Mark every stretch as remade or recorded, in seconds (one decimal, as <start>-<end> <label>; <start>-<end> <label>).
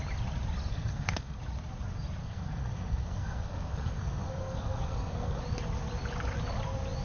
0.0-0.7 recorded; 0.7-1.4 remade; 1.4-2.2 recorded; 2.2-5.4 remade; 5.4-7.0 recorded